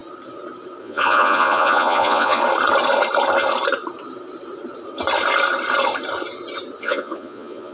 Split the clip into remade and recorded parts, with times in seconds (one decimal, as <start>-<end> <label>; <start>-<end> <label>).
0.0-0.8 recorded; 0.8-2.4 remade; 2.4-6.8 recorded; 6.8-7.7 remade